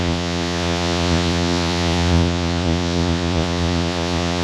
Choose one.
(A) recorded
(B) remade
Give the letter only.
B